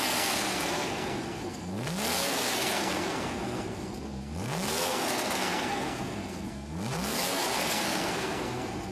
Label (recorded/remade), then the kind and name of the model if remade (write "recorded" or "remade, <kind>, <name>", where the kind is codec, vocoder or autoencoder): remade, codec, SNAC